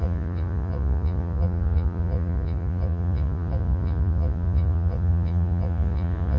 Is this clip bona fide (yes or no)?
no